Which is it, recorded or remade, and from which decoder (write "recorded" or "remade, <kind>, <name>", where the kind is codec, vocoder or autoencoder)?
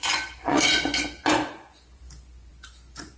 remade, vocoder, Vocos